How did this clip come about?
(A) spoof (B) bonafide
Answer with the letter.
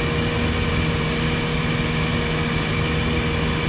B